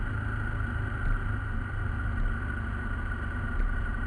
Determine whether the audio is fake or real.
real